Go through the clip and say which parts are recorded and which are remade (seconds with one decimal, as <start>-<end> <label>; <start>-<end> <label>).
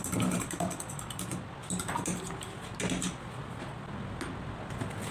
0.0-5.1 recorded